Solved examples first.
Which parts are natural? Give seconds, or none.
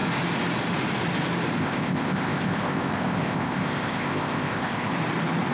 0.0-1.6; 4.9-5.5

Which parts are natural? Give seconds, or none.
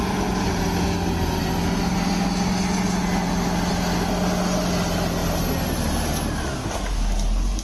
0.0-7.6